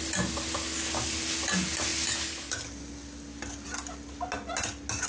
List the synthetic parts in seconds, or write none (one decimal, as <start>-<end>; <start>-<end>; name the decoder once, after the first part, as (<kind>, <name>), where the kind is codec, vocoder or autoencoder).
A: none